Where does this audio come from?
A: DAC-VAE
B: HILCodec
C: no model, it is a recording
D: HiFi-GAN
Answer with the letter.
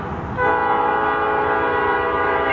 C